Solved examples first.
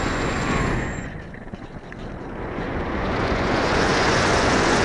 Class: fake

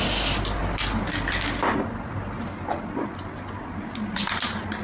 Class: real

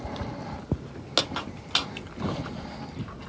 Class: real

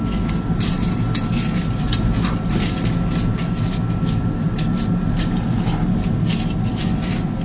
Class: real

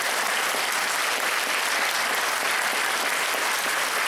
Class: real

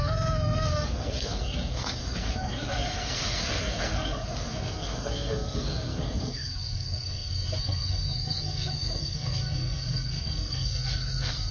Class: fake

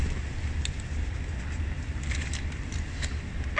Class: real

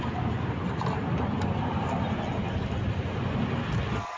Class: real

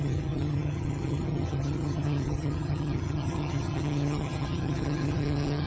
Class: fake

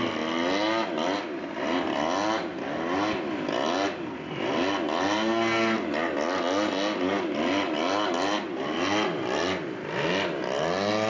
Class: real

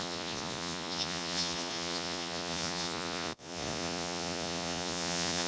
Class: fake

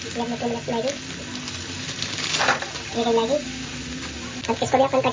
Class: real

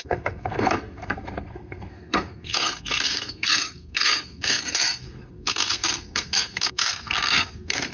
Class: fake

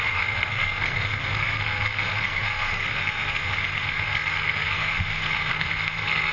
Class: fake